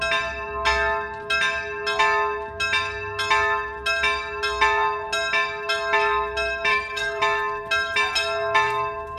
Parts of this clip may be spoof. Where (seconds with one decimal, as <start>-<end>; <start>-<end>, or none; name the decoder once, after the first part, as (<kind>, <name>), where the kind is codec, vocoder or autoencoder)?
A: 6.7-7.2 (codec, SNAC)